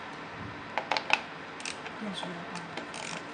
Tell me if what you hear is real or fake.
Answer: real